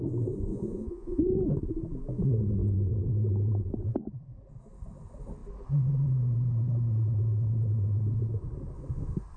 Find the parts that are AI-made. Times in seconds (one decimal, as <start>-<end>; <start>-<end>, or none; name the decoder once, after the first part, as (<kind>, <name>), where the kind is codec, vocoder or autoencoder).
0.5-1.2 (vocoder, Vocos)